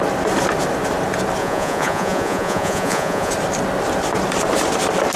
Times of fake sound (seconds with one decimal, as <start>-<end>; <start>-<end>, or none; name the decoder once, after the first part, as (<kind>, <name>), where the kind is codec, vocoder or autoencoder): 1.4-3.3 (vocoder, Vocos)